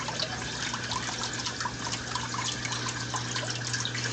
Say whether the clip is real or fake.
real